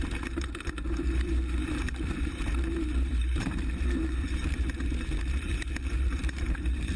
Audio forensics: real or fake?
fake